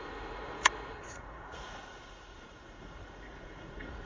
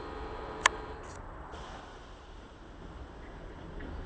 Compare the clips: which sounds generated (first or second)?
first